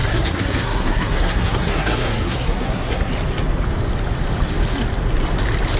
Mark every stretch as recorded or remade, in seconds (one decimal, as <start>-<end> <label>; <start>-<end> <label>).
0.0-3.1 remade; 3.1-5.8 recorded